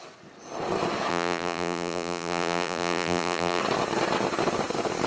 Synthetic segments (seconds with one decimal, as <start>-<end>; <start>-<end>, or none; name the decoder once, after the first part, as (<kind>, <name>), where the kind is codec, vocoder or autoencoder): 1.1-3.6 (vocoder, BigVGAN v2)